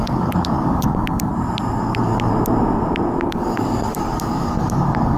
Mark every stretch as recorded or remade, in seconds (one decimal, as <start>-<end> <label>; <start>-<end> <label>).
0.0-1.3 remade; 1.3-1.8 recorded; 1.8-2.3 remade; 2.3-3.3 recorded; 3.3-5.2 remade

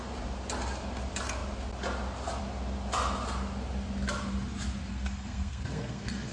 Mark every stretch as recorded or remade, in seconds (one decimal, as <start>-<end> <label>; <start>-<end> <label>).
0.0-4.9 recorded; 4.9-6.3 remade

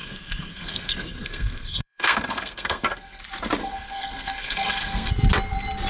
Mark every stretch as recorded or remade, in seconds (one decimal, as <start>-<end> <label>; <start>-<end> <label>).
0.0-3.2 remade; 3.2-3.6 recorded; 3.6-5.1 remade; 5.1-5.9 recorded

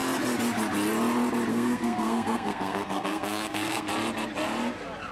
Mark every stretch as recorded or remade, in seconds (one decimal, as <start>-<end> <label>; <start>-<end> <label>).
0.0-1.5 recorded; 1.5-3.9 remade; 3.9-5.1 recorded

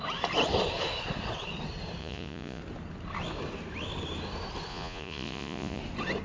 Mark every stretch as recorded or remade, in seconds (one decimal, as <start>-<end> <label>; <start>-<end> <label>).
0.0-2.0 recorded; 2.0-2.6 remade; 2.6-4.7 recorded; 4.7-5.8 remade; 5.8-6.2 recorded

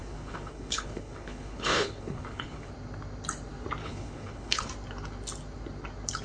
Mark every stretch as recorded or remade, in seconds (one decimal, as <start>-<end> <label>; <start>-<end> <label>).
0.0-2.7 remade; 2.7-3.8 recorded; 3.8-4.7 remade; 4.7-6.2 recorded

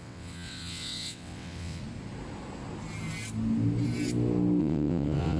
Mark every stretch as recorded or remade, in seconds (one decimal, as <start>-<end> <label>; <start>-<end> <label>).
0.0-1.8 remade; 1.8-4.6 recorded; 4.6-5.4 remade